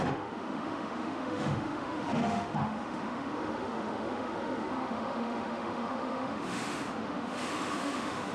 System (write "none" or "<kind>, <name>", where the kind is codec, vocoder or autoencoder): autoencoder, DAC-VAE